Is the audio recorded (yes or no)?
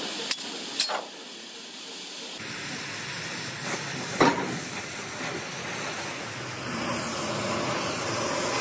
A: yes